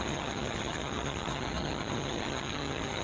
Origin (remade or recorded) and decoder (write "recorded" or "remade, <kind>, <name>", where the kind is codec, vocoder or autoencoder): remade, vocoder, HiFi-GAN